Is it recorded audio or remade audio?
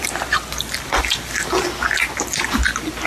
recorded